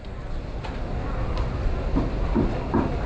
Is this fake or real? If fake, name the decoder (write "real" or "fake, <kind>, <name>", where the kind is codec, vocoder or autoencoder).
real